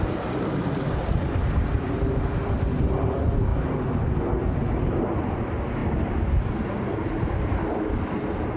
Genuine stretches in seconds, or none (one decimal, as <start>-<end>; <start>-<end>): 3.5-5.1